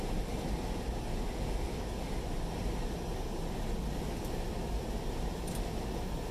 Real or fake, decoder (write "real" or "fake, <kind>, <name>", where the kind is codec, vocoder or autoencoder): real